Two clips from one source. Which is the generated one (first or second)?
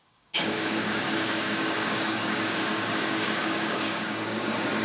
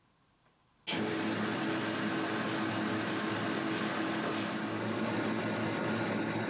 first